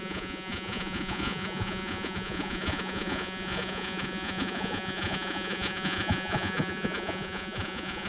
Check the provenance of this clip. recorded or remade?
remade